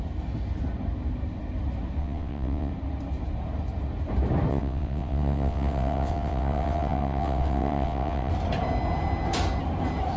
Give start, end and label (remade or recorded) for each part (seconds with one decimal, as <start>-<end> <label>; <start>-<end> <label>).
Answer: 0.0-2.0 recorded; 2.0-2.7 remade; 2.7-4.5 recorded; 4.5-8.3 remade; 8.3-10.2 recorded